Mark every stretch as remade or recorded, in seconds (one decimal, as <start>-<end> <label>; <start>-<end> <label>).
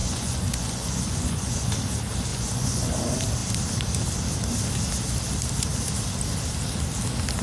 0.0-1.7 remade; 1.7-2.3 recorded; 2.3-2.9 remade; 2.9-7.4 recorded